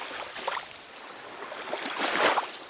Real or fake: real